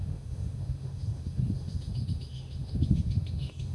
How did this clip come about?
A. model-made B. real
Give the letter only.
A